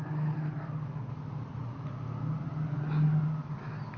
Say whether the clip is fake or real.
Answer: real